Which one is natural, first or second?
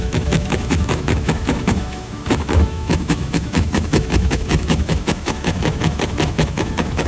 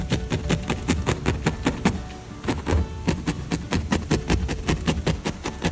second